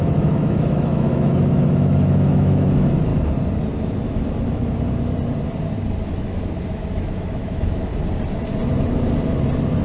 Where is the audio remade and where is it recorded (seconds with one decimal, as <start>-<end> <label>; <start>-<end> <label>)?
0.0-3.1 remade; 3.1-6.1 recorded; 6.1-7.9 remade; 7.9-9.8 recorded